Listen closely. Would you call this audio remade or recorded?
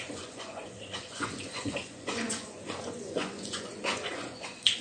remade